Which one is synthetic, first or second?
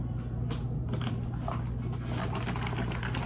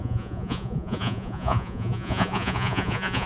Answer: second